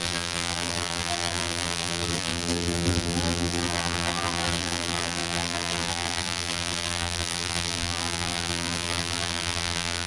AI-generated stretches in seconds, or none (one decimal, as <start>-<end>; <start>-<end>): 0.0-10.1